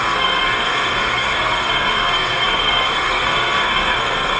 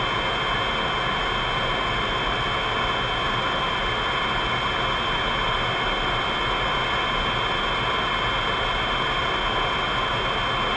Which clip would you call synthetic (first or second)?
first